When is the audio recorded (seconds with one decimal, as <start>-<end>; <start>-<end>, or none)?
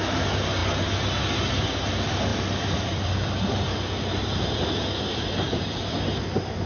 0.0-2.3; 5.8-6.7